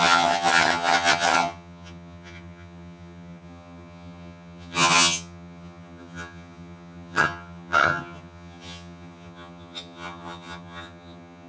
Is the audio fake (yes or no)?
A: yes